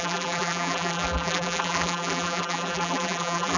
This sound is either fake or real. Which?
fake